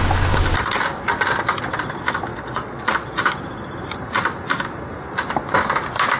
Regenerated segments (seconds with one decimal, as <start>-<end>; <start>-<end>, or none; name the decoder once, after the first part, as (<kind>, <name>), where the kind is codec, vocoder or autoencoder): 2.3-3.2 (vocoder, Vocos)